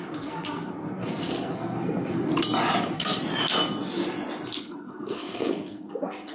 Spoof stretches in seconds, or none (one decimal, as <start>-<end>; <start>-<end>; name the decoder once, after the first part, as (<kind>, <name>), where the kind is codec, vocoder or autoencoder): 0.0-2.3 (codec, SNAC); 2.9-3.3; 4.6-6.3